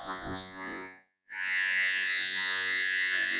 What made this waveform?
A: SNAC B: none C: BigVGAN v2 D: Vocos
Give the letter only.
D